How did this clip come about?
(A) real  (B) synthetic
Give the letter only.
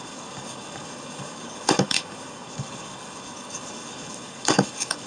B